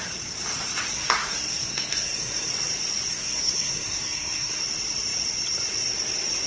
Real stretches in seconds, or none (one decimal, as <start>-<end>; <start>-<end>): 0.0-0.9; 2.5-3.1; 4.6-6.5